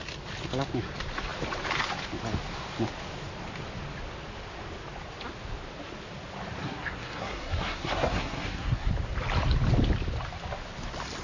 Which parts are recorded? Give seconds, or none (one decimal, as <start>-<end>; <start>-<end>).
0.0-6.6; 8.9-11.2